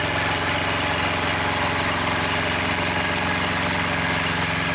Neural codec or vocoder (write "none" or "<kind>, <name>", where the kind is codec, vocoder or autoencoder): none